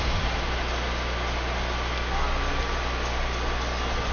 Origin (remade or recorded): recorded